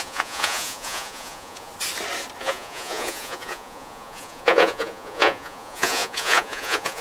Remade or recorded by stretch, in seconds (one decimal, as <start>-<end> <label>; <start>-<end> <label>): 0.0-1.7 remade; 1.7-2.4 recorded; 2.4-7.0 remade